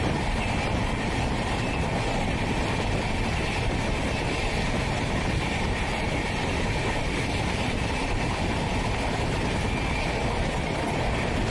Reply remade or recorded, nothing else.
recorded